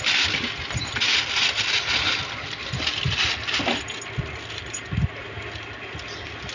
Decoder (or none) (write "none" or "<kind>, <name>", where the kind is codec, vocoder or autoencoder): none